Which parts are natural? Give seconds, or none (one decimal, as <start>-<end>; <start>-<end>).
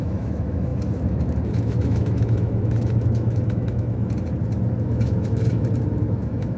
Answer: 4.0-4.8